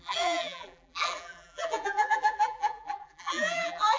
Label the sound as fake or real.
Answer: fake